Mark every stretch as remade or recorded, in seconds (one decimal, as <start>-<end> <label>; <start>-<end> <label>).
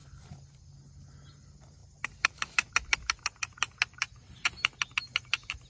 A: 0.0-0.6 remade; 0.6-5.7 recorded